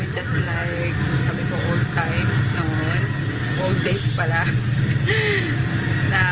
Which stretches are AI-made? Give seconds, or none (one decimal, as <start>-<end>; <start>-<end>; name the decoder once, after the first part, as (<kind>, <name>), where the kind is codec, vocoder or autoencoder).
none